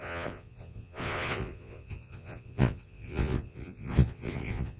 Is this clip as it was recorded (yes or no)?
no